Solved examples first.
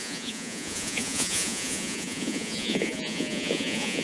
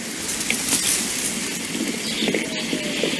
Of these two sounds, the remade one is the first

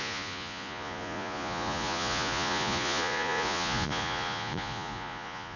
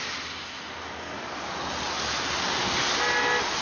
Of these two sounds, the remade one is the first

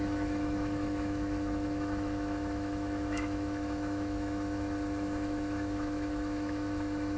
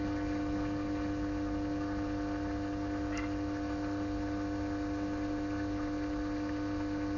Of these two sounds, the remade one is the first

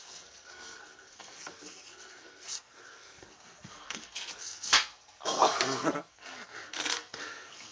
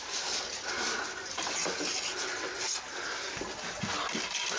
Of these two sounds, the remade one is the first